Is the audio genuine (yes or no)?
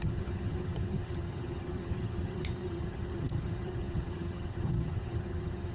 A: no